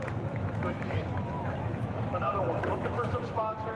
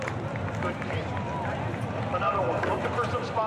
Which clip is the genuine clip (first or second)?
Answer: second